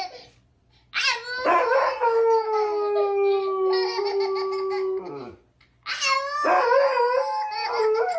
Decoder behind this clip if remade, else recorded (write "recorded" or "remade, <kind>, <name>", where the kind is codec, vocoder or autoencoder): recorded